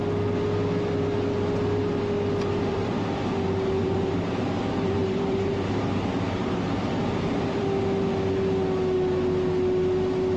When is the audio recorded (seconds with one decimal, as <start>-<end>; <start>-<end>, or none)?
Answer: 0.0-2.7; 3.3-3.8; 7.6-10.4